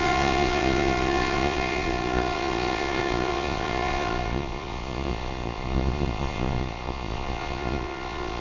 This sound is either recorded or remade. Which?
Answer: remade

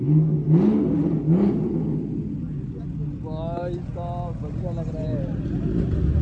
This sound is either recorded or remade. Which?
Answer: recorded